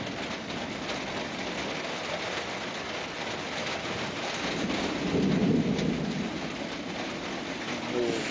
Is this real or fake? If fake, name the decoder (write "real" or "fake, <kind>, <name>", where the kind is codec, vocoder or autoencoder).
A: real